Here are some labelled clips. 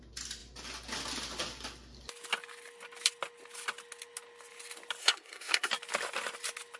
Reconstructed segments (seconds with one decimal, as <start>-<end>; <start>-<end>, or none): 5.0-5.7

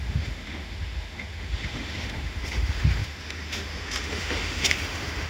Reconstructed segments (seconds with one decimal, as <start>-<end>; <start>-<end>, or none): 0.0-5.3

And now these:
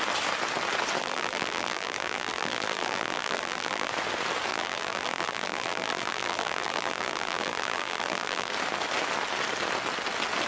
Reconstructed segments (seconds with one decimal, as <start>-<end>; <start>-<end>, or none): 1.0-3.9; 4.5-8.5

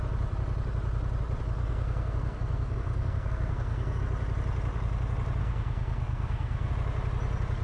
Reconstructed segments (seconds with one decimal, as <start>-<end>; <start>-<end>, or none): 1.6-4.0; 5.4-6.7

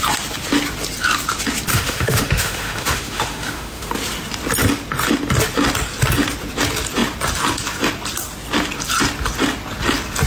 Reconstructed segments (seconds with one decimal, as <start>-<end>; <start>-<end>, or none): 1.7-3.9

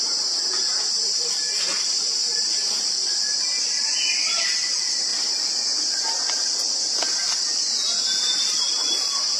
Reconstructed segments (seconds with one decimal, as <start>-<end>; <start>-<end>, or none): 0.0-2.2; 4.1-5.1; 7.7-9.4

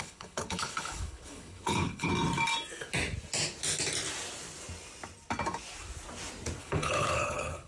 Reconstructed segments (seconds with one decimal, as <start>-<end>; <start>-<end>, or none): 0.0-2.1; 6.6-7.7